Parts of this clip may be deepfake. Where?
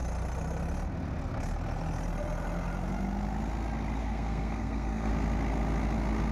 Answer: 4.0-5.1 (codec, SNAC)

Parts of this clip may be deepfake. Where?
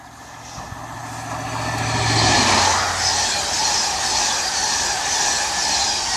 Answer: none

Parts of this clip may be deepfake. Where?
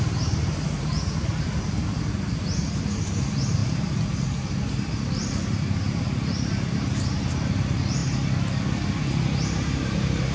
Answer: 0.0-3.6 (vocoder, BigVGAN v2); 4.7-8.0; 8.9-10.3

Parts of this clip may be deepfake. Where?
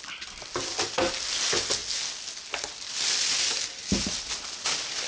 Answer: none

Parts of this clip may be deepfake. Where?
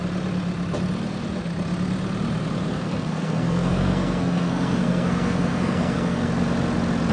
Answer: 2.7-6.3 (codec, SNAC)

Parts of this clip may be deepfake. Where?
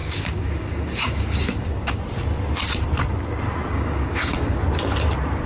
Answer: 0.0-2.0 (codec, DAC); 3.7-4.6